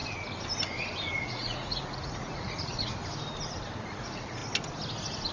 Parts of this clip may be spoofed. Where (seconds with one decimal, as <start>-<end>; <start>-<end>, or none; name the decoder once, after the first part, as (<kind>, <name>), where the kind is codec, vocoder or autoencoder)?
1.2-3.0 (vocoder, Vocos); 3.9-4.4